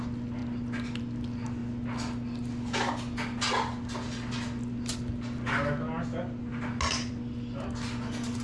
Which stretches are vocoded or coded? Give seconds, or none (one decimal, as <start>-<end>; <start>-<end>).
none